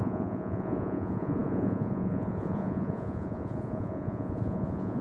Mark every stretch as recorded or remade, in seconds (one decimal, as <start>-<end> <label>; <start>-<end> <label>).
0.0-5.0 remade